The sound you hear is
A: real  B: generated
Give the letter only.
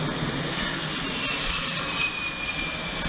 A